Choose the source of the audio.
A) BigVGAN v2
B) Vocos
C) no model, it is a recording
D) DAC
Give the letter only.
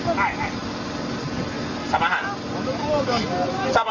C